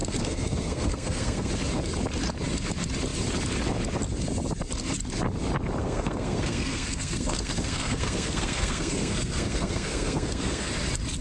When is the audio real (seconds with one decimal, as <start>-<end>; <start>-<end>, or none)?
1.5-5.8; 10.7-11.2